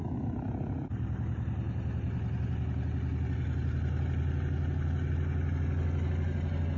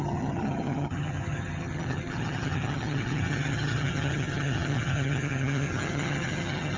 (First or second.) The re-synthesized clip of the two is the second